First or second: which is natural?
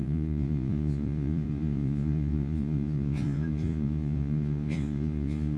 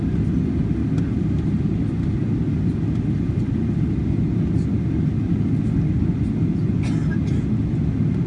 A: second